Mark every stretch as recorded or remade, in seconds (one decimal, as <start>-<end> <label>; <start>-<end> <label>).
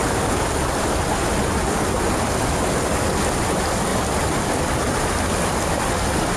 0.0-6.4 recorded